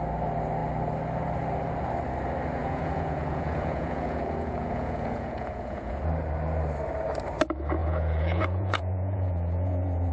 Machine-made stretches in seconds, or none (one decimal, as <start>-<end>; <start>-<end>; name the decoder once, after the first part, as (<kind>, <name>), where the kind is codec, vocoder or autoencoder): 2.6-6.0 (vocoder, Vocos); 7.8-10.1